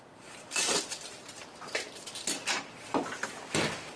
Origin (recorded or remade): remade